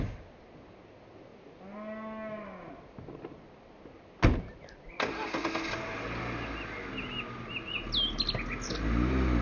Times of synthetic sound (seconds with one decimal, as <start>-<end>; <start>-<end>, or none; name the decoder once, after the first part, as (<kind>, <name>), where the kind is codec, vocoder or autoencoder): none